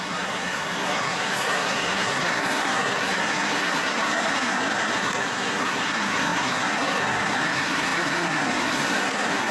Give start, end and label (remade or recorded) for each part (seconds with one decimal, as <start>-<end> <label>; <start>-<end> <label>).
0.0-9.5 remade